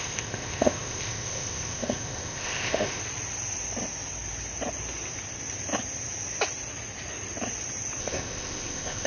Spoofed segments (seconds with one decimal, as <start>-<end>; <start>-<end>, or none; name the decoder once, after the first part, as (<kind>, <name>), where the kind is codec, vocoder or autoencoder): 0.0-3.0 (codec, ZipCodec); 8.0-9.1